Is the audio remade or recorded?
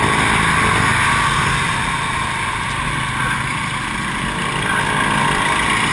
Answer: recorded